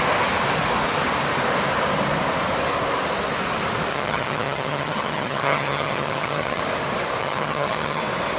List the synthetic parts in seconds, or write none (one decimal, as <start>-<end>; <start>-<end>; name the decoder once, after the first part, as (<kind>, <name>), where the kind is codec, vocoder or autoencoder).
3.9-6.6 (vocoder, HiFi-GAN); 7.2-8.0